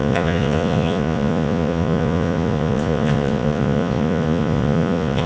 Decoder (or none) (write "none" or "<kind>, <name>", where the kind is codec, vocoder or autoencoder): vocoder, Vocos